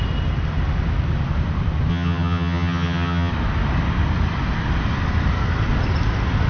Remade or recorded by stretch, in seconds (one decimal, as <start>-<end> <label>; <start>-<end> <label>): 0.0-1.9 recorded; 1.9-3.3 remade; 3.3-6.5 recorded